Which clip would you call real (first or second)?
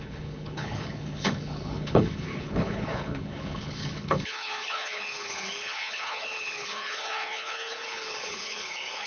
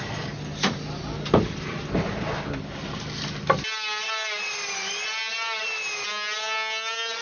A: second